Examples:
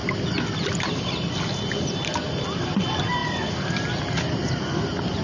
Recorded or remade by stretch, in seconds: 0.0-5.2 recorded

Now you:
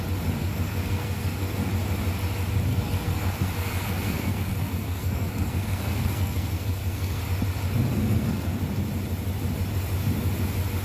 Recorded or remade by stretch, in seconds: 0.0-0.4 recorded; 0.4-1.7 remade; 1.7-2.7 recorded; 2.7-7.2 remade; 7.2-7.9 recorded; 7.9-8.6 remade; 8.6-10.8 recorded